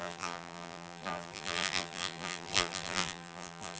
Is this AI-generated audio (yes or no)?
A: yes